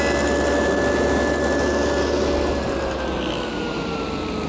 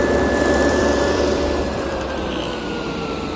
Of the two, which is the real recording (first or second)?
first